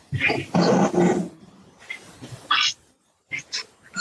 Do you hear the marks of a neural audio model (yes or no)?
no